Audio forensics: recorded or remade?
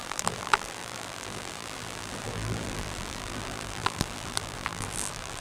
remade